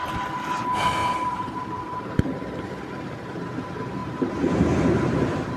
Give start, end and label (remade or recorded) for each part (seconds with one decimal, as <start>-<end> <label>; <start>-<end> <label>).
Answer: 0.0-1.0 recorded; 1.0-2.1 remade; 2.1-4.0 recorded; 4.0-4.5 remade; 4.5-5.6 recorded